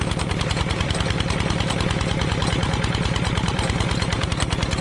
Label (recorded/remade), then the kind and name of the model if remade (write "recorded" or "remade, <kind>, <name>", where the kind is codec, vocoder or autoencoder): remade, vocoder, BigVGAN v2